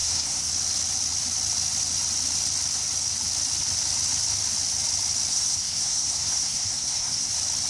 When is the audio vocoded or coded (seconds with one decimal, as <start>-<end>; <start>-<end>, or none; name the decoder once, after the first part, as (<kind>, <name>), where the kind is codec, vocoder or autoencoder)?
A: 0.0-0.5 (codec, SNAC); 5.3-7.3